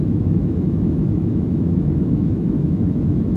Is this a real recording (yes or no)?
no